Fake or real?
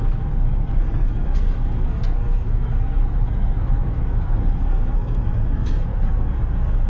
fake